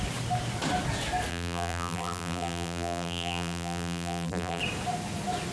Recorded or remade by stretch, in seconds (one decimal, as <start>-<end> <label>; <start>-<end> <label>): 0.0-1.3 recorded; 1.3-4.6 remade; 4.6-5.5 recorded